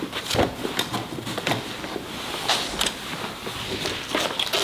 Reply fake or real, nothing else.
real